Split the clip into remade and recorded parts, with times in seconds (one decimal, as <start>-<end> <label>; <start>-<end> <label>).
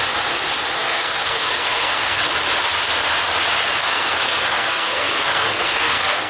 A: 0.0-0.8 recorded; 0.8-2.3 remade; 2.3-3.8 recorded; 3.8-6.3 remade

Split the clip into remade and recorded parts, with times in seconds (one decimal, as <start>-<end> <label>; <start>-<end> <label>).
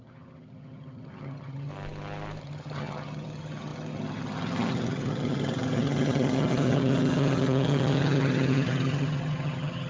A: 0.0-1.7 remade; 1.7-2.4 recorded; 2.4-9.9 remade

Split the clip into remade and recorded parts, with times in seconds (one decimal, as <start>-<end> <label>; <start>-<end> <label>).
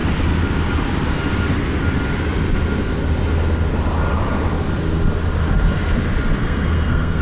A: 0.0-6.4 recorded; 6.4-7.2 remade